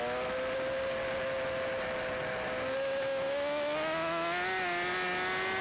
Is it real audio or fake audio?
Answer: real